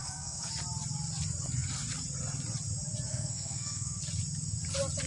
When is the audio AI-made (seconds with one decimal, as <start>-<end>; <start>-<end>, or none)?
0.0-0.5; 3.1-4.0